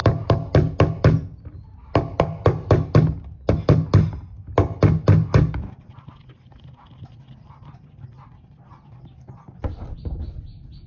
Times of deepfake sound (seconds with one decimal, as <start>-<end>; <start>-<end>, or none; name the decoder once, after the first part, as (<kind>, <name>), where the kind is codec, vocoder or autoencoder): none